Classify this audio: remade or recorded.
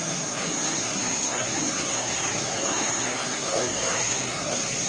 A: remade